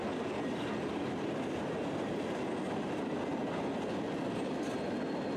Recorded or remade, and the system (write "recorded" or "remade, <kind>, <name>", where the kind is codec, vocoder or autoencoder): recorded